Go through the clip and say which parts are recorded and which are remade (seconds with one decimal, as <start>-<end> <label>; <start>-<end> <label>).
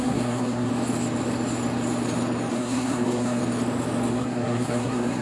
0.0-0.7 remade; 0.7-2.5 recorded; 2.5-3.4 remade; 3.4-4.1 recorded; 4.1-5.2 remade